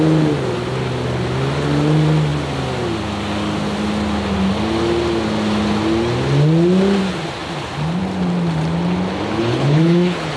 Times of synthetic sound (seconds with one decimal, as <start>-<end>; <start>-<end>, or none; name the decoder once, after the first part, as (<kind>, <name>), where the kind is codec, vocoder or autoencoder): 9.4-10.4 (codec, HILCodec)